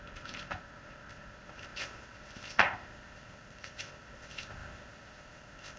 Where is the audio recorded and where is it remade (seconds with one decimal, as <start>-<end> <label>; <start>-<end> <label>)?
0.0-5.8 remade